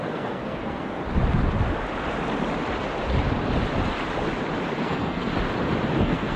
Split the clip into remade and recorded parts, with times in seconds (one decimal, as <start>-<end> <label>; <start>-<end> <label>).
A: 0.0-1.0 remade; 1.0-4.8 recorded; 4.8-5.3 remade; 5.3-6.0 recorded; 6.0-6.4 remade